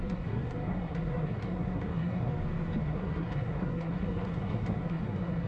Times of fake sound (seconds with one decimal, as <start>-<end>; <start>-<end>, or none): 0.0-2.3; 2.8-5.5